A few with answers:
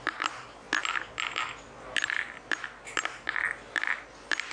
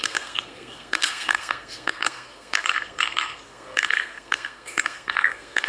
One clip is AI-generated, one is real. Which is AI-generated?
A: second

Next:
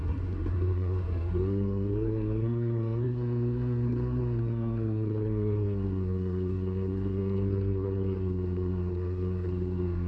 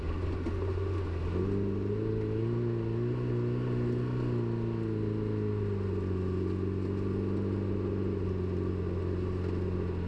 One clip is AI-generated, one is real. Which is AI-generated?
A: first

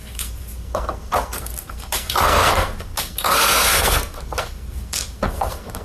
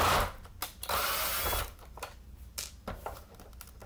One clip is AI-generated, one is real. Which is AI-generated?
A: first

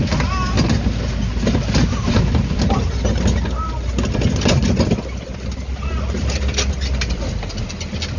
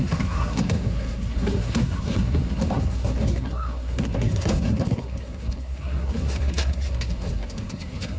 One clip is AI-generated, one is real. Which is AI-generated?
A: second